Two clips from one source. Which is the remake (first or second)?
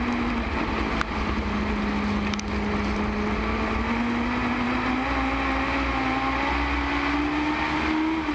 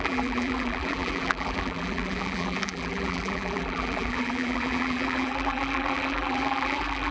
second